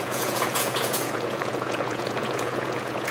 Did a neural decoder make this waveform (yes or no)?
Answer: yes